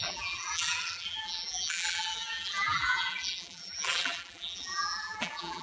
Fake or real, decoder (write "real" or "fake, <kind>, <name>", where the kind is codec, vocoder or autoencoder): fake, vocoder, BigVGAN v2